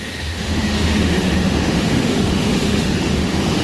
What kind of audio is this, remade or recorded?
remade